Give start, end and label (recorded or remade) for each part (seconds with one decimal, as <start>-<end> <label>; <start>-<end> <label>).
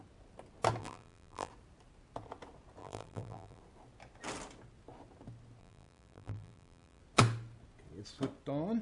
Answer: 0.0-0.8 recorded; 0.8-1.5 remade; 1.5-2.8 recorded; 2.8-3.6 remade; 3.6-5.6 recorded; 5.6-7.0 remade; 7.0-8.8 recorded